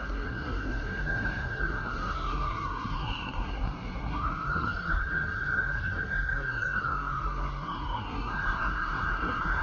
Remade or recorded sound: remade